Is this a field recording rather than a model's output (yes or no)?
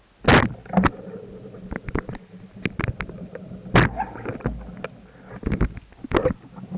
yes